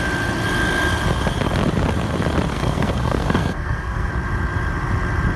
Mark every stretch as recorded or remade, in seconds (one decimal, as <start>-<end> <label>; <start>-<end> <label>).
0.0-2.5 recorded; 2.5-4.1 remade; 4.1-5.4 recorded